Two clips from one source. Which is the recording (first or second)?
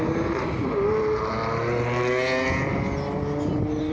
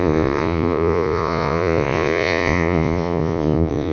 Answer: first